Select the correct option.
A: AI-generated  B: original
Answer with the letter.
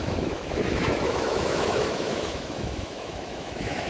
A